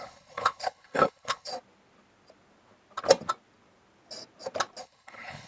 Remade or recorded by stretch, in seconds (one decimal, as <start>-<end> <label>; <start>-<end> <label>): 0.0-1.5 remade; 1.5-4.8 recorded; 4.8-5.5 remade

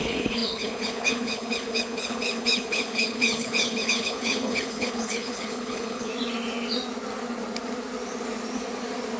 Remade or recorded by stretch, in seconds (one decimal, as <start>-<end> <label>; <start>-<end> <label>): 0.0-6.1 remade; 6.1-9.2 recorded

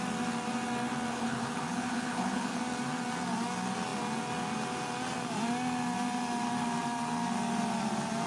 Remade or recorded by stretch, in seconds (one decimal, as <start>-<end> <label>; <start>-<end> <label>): 0.0-1.1 recorded; 1.1-2.6 remade; 2.6-8.3 recorded

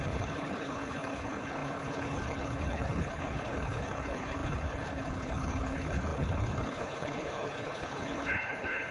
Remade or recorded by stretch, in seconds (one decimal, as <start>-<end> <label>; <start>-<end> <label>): 0.0-8.9 remade

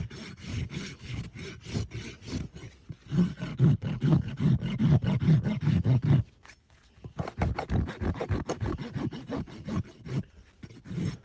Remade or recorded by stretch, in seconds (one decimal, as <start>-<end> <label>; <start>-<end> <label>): 0.0-0.5 recorded; 0.5-1.2 remade; 1.2-3.5 recorded; 3.5-4.3 remade; 4.3-11.2 recorded